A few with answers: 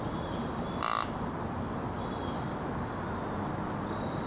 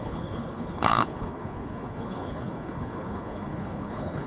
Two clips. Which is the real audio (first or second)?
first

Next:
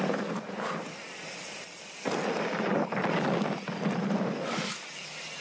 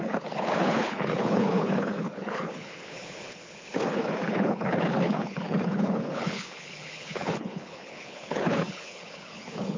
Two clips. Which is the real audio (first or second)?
first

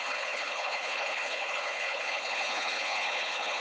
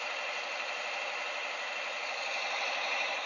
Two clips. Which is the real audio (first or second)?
second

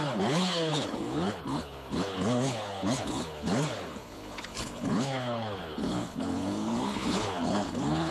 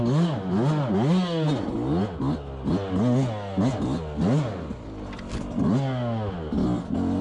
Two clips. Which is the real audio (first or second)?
second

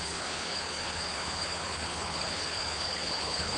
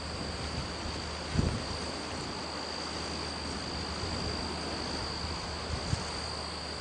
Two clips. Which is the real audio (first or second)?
second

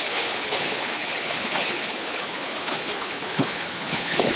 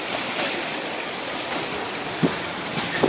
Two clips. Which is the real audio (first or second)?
second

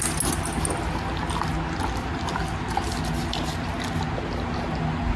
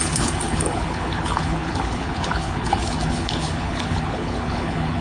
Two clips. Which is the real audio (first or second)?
first